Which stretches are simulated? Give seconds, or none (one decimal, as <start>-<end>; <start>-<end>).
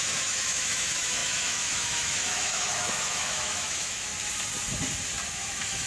0.0-4.1; 5.3-5.9